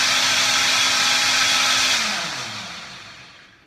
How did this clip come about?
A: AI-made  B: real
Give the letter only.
B